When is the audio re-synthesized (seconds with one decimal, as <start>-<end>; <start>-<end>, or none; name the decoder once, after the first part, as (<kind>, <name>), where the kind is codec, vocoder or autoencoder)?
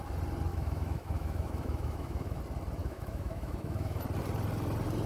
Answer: 0.5-2.4 (autoencoder, DAC-VAE); 2.8-4.0